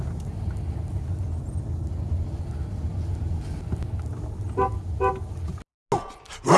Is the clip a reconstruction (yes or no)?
no